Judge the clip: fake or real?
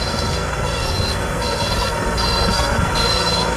fake